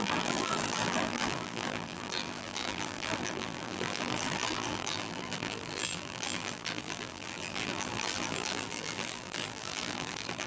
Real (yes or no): no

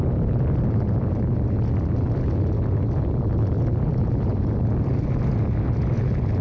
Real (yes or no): yes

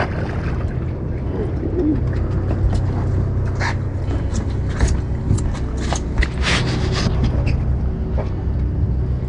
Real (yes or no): yes